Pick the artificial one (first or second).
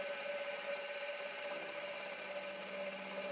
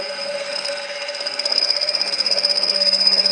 second